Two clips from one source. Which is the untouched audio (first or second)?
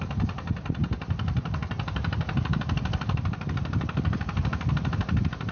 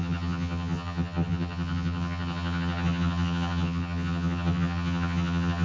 first